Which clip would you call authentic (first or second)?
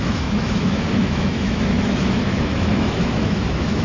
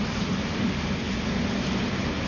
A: second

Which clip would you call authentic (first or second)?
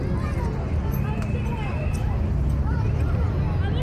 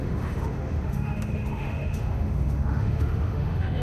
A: first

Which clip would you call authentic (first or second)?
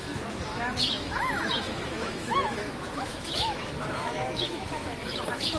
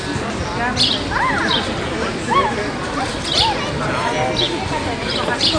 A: second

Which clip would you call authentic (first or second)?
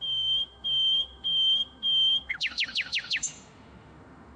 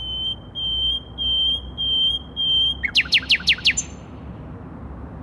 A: second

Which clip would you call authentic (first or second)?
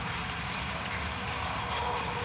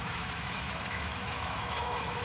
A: first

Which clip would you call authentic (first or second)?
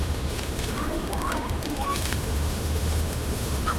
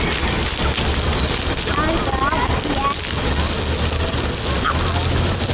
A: second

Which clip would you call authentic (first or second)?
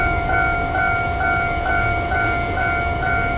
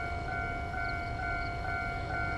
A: second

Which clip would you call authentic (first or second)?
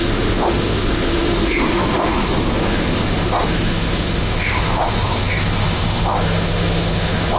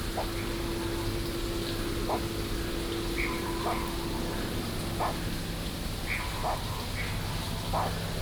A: second